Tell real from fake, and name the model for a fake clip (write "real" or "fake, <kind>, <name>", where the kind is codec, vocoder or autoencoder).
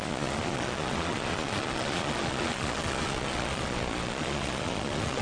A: fake, vocoder, Vocos